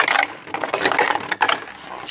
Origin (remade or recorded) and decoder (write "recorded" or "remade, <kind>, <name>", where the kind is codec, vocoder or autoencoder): recorded